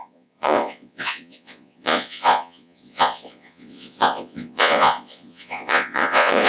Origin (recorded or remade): remade